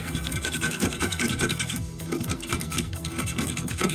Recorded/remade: remade